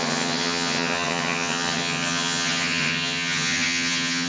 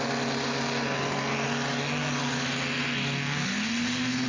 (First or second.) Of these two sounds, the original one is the second